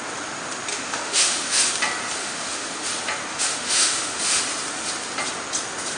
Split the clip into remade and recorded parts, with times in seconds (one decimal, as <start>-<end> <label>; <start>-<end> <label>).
0.0-0.7 recorded; 0.7-1.7 remade; 1.7-2.2 recorded; 2.2-2.9 remade; 2.9-3.3 recorded; 3.3-4.4 remade; 4.4-6.0 recorded